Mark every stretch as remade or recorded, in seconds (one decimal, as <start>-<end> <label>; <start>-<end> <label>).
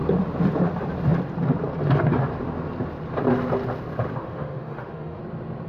0.0-4.2 recorded; 4.2-5.2 remade; 5.2-5.7 recorded